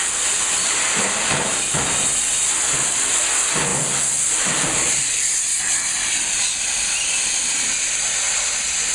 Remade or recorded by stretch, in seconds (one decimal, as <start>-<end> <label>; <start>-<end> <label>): 0.0-3.7 recorded; 3.7-5.7 remade; 5.7-8.9 recorded